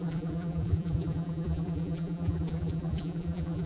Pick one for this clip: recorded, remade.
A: remade